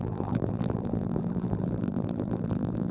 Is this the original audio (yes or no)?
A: no